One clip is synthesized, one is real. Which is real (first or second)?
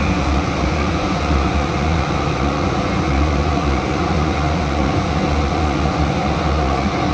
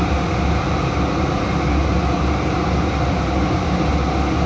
second